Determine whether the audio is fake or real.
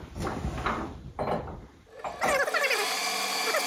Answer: real